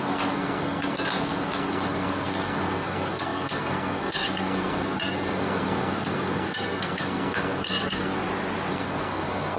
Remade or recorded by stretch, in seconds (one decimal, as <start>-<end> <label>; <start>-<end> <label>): 0.0-8.2 remade; 8.2-8.7 recorded; 8.7-9.6 remade